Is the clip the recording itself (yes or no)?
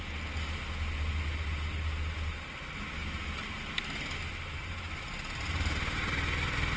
yes